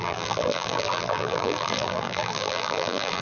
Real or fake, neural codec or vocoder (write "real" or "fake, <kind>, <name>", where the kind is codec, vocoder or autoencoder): fake, vocoder, BigVGAN v2